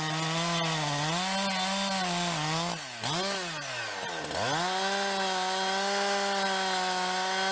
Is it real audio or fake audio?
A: real